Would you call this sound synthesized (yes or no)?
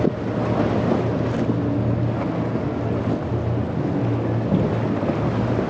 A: no